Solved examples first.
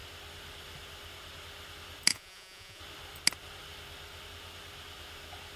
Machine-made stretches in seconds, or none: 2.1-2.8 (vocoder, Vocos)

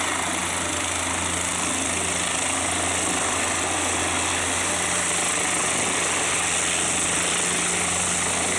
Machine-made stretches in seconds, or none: none

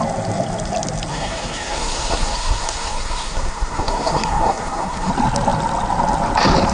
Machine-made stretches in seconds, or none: 1.1-5.1 (codec, SNAC)

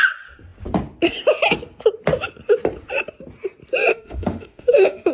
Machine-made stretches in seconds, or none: 3.9-5.1 (autoencoder, DAC-VAE)

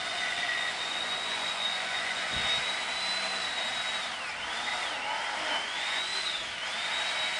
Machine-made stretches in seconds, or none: 0.0-2.4 (vocoder, Vocos); 5.6-6.1

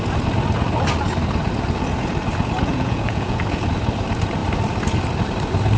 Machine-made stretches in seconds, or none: 2.7-3.4 (vocoder, Vocos)